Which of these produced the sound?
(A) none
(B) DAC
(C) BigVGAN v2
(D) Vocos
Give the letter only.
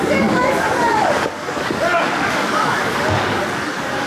B